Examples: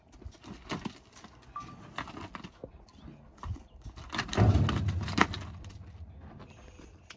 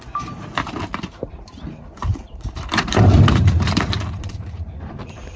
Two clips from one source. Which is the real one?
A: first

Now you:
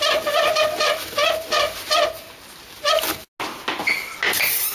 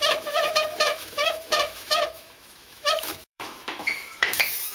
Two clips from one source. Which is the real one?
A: first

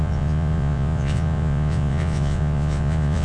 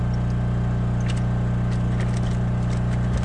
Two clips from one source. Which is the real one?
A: second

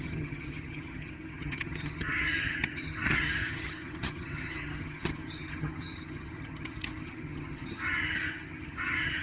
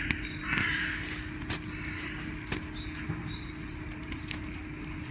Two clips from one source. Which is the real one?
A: second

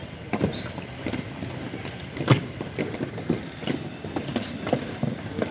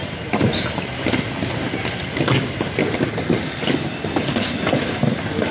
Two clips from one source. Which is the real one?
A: second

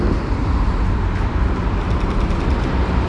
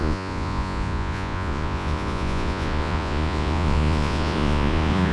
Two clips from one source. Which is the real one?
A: first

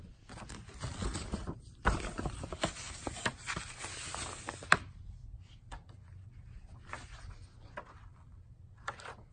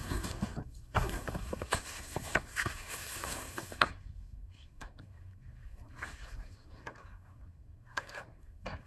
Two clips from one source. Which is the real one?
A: first